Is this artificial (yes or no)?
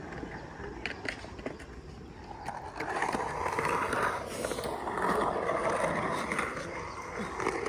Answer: no